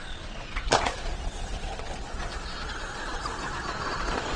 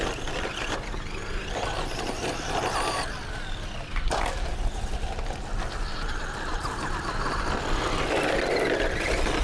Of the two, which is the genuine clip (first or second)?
second